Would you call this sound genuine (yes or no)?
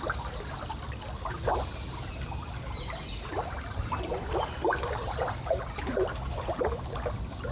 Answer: yes